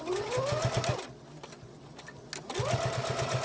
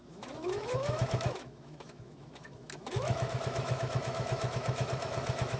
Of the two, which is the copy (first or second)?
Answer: second